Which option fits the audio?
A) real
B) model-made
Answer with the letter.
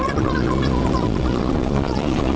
B